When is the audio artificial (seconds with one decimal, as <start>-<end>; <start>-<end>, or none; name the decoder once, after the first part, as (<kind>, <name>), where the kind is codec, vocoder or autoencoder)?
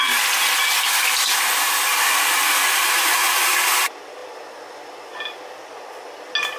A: 1.9-3.5 (vocoder, BigVGAN v2)